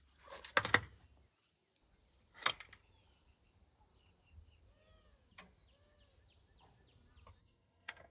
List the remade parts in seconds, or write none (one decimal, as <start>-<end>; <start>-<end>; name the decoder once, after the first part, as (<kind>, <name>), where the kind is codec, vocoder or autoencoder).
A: 7.4-8.1 (codec, SNAC)